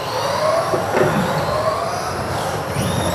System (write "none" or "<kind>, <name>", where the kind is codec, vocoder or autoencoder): none